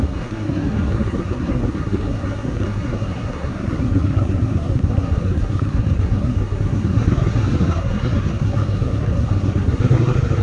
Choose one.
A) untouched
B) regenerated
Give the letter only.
B